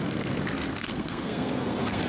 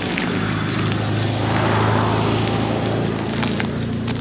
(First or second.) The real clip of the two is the second